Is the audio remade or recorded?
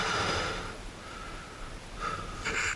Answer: remade